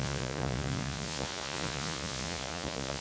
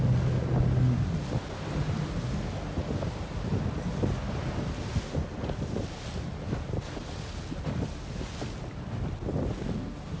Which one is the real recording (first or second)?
second